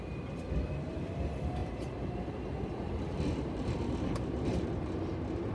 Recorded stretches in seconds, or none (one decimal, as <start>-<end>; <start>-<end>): 0.0-1.6; 4.9-5.5